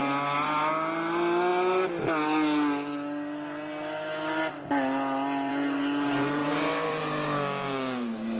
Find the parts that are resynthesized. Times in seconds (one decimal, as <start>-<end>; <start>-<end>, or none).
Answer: 6.4-7.0